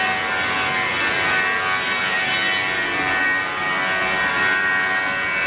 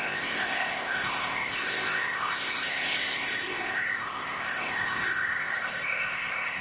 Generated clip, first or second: second